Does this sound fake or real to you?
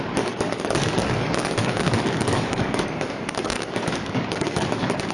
fake